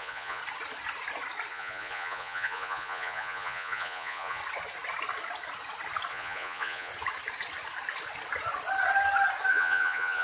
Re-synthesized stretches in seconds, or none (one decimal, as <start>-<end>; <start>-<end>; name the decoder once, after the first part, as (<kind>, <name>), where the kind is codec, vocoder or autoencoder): 0.0-0.4 (vocoder, Vocos); 1.5-4.4; 6.1-6.9; 9.5-10.2